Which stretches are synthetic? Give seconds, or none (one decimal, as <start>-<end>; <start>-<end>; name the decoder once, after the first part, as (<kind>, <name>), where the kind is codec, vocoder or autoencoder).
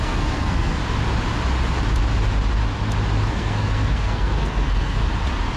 0.0-0.8 (codec, SNAC); 3.3-5.0